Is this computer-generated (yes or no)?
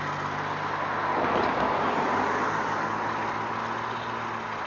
no